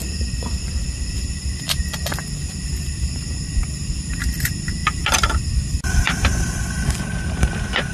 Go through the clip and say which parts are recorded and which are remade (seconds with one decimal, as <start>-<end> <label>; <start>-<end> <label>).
0.0-4.8 recorded; 4.8-7.4 remade; 7.4-7.9 recorded